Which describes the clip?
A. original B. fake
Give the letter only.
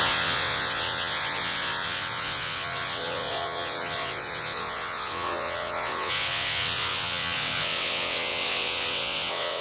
B